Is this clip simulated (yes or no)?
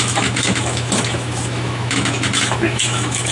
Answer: yes